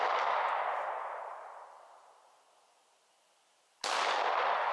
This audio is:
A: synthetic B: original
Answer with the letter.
B